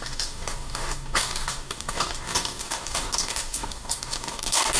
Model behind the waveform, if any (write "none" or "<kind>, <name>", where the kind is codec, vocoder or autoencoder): codec, DAC